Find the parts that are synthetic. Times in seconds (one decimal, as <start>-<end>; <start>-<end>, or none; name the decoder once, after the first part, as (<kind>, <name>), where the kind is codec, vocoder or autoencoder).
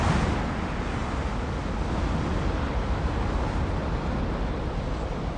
none